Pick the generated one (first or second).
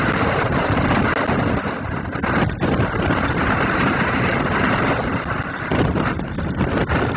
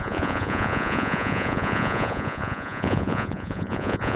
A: second